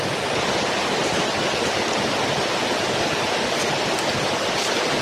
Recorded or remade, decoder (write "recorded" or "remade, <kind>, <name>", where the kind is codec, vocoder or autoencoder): recorded